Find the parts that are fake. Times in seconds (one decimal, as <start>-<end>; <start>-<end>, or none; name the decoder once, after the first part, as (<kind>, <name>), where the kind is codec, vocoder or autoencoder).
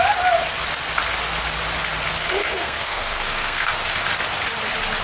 2.2-3.7 (codec, SNAC)